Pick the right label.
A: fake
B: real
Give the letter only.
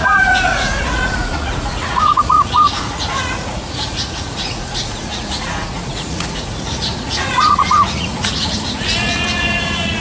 A